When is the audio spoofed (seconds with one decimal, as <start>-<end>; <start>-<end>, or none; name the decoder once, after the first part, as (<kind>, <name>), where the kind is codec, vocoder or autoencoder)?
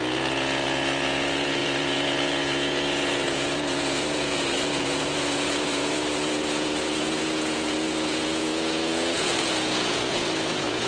0.0-10.9 (vocoder, Vocos)